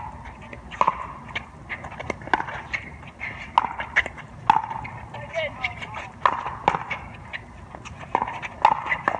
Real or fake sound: real